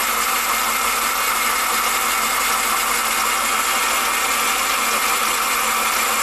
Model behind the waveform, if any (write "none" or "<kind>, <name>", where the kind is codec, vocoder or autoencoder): none